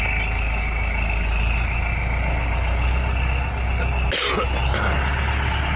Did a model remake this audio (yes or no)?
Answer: no